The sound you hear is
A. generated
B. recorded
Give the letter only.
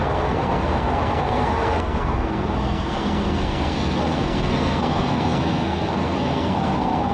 A